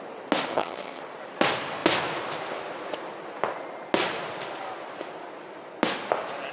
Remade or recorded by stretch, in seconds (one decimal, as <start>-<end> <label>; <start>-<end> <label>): 0.0-0.5 recorded; 0.5-1.0 remade; 1.0-6.5 recorded